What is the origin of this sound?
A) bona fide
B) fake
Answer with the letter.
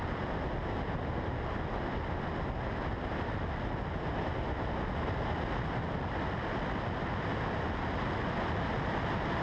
A